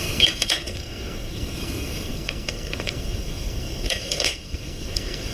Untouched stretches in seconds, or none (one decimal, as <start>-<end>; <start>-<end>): none